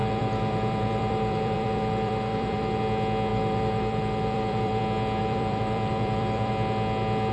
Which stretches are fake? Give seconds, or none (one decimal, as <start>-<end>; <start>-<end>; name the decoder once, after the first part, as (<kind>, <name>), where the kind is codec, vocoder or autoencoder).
0.0-2.8 (vocoder, BigVGAN v2); 3.3-4.8; 5.2-6.5